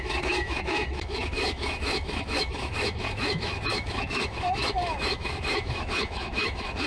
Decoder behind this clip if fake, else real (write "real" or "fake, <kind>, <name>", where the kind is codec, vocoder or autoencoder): fake, autoencoder, DAC-VAE